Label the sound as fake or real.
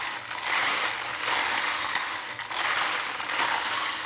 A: real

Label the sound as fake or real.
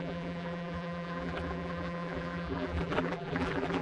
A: fake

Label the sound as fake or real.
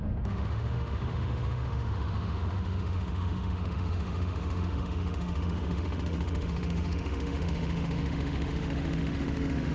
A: fake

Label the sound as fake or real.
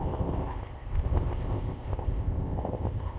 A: fake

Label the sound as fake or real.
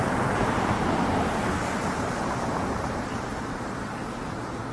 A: fake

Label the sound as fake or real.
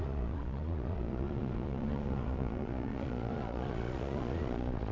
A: fake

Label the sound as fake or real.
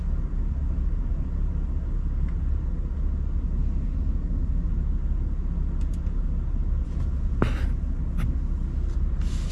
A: real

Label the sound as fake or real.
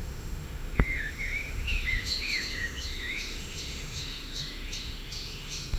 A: fake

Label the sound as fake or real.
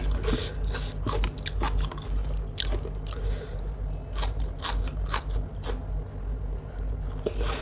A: real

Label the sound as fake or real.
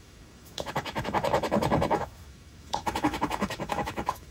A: fake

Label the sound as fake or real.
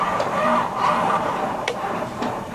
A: fake